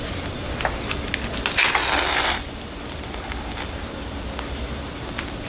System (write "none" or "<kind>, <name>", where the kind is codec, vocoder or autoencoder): none